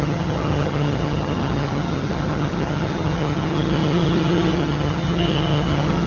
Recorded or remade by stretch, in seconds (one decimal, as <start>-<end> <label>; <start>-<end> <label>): 0.0-6.1 remade